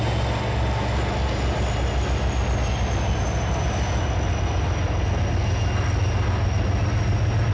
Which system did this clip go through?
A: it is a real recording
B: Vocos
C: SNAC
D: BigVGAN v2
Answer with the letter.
A